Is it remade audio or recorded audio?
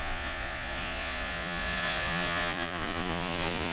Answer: remade